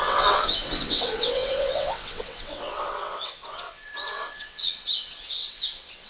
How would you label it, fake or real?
fake